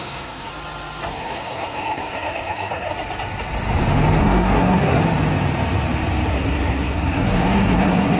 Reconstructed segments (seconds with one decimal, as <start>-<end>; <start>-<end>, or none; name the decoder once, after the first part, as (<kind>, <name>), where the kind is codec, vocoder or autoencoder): 0.0-0.5 (codec, SNAC); 1.1-2.9; 4.2-5.0; 6.3-8.2